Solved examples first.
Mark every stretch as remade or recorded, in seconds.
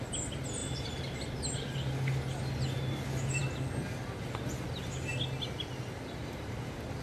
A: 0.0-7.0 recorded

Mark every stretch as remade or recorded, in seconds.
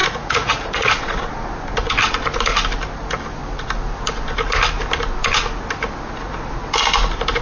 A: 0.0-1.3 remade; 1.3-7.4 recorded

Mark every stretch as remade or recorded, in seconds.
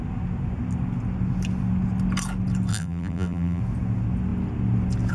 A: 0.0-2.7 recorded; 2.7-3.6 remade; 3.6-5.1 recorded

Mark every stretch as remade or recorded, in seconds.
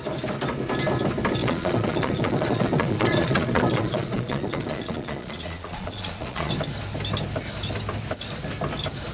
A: 0.0-1.4 recorded; 1.4-6.5 remade; 6.5-9.1 recorded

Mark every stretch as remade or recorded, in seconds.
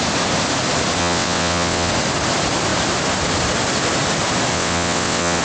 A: 0.0-1.0 recorded; 1.0-1.9 remade; 1.9-4.5 recorded; 4.5-5.4 remade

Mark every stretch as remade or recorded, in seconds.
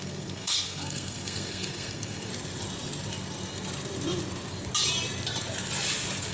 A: 0.0-2.3 remade; 2.3-6.3 recorded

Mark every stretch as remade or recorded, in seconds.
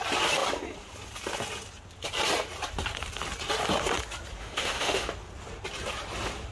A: 0.0-4.4 recorded; 4.4-5.1 remade; 5.1-6.5 recorded